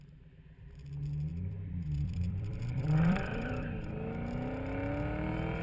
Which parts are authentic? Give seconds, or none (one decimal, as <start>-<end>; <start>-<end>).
0.0-1.3; 3.9-5.6